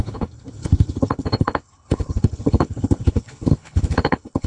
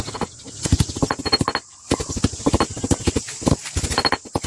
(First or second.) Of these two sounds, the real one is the second